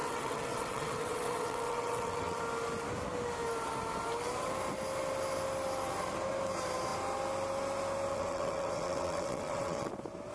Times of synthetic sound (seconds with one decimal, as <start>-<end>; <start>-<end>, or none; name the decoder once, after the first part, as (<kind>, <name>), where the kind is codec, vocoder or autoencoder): 0.0-2.4 (vocoder, WaveNeXt); 8.1-9.9